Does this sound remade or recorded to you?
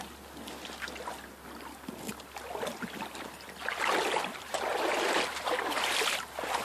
recorded